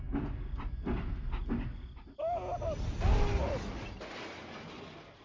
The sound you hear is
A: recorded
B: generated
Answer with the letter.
A